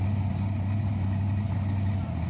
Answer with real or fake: real